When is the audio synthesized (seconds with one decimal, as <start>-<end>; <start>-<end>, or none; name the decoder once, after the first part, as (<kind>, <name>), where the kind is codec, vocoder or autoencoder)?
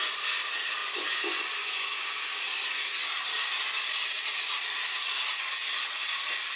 0.8-2.3 (vocoder, Vocos)